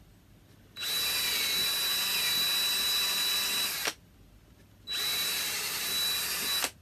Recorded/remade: recorded